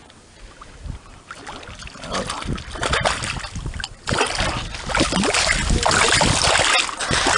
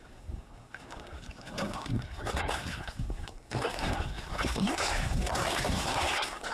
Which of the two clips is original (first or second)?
first